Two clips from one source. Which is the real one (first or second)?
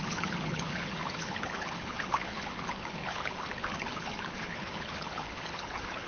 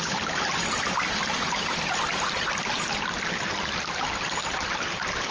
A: second